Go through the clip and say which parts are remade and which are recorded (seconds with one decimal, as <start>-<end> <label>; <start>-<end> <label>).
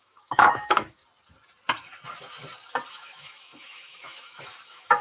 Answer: 0.0-1.0 remade; 1.0-2.9 recorded; 2.9-5.0 remade